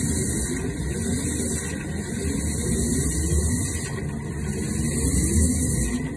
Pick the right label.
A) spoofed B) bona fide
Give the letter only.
B